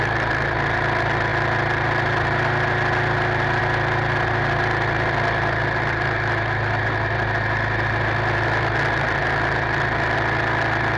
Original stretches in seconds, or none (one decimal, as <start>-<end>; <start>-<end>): 0.0-11.0